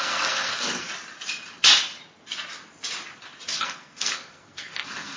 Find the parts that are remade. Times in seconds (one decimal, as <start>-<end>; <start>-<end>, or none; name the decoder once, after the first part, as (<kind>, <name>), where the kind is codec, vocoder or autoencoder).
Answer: 0.0-0.9 (codec, SNAC); 3.6-5.2